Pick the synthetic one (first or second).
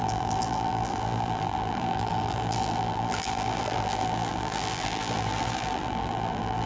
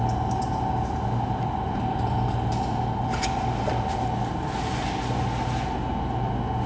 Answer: first